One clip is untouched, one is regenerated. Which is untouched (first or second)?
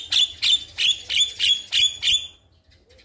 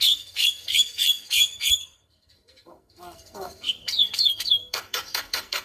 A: first